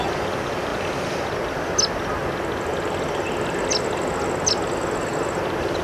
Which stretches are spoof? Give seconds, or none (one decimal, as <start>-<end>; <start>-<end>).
none